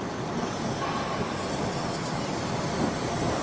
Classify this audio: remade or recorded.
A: recorded